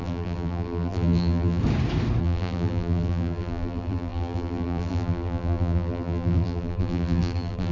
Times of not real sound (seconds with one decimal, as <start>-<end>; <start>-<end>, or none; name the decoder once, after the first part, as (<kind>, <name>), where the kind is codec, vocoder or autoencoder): 0.0-1.6 (vocoder, BigVGAN v2); 2.2-7.7

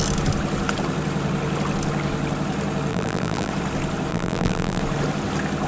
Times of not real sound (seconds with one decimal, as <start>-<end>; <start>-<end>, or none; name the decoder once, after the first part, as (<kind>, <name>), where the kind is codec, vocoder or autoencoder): 2.9-3.5 (vocoder, BigVGAN v2); 4.1-4.8

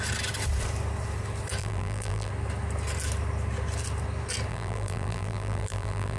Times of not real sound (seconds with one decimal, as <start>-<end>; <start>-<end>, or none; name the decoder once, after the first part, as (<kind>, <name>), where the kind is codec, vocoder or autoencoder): 1.6-2.3 (vocoder, BigVGAN v2); 4.5-6.2

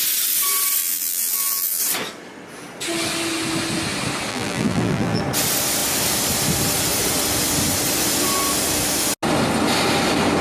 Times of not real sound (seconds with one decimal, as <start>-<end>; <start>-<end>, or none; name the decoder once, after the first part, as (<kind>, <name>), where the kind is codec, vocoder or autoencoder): 0.8-1.8 (vocoder, BigVGAN v2); 4.3-5.2

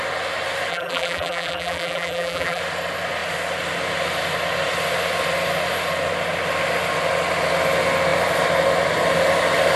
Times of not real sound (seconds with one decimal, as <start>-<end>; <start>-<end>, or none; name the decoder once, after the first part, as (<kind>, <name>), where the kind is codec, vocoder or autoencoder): 0.7-2.6 (vocoder, BigVGAN v2)

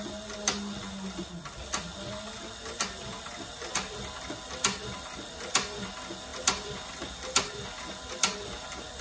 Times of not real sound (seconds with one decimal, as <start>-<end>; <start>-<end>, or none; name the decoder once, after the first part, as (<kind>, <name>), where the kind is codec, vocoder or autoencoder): none